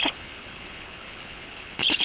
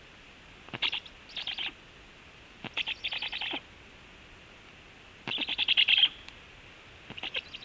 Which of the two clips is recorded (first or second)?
second